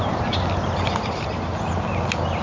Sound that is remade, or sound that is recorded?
recorded